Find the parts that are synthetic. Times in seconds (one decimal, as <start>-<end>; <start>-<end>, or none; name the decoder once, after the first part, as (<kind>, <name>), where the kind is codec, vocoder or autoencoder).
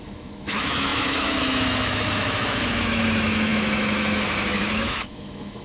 0.0-5.6 (autoencoder, DAC-VAE)